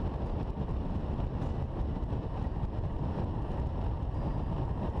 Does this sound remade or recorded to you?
recorded